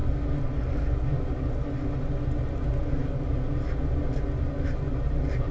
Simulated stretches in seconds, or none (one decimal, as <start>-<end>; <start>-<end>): none